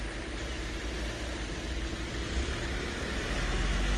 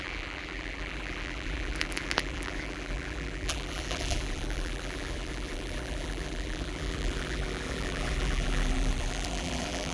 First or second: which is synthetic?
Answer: second